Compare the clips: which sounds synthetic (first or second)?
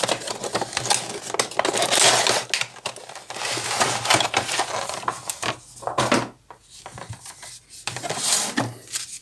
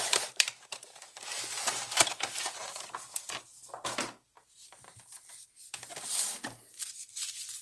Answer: second